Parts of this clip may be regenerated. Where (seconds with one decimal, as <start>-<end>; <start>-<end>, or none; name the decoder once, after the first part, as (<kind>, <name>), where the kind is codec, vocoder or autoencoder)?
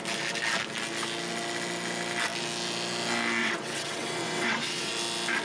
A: 3.4-4.9 (vocoder, WaveNeXt)